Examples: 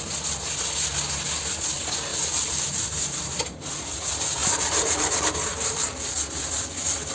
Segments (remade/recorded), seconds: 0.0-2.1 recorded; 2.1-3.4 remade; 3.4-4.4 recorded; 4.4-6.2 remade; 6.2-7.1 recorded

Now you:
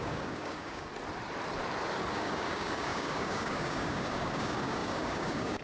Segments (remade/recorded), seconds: 0.0-0.9 remade; 0.9-2.1 recorded; 2.1-5.6 remade

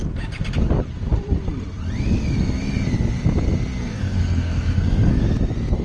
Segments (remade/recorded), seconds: 0.0-3.8 recorded; 3.8-5.2 remade; 5.2-5.8 recorded